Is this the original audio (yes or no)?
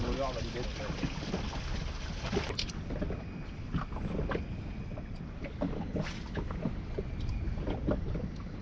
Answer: yes